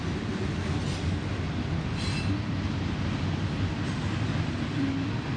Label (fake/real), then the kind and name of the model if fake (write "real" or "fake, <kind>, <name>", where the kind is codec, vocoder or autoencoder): real